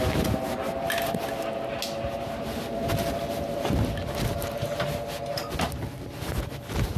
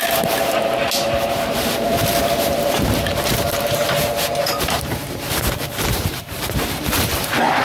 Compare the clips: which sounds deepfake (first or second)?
second